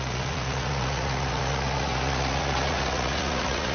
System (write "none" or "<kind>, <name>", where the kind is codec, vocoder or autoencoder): vocoder, Vocos